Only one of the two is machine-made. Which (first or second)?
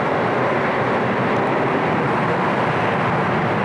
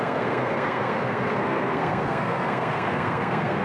second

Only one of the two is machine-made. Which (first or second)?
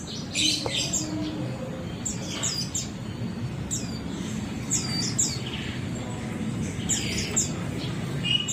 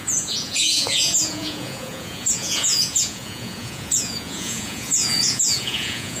second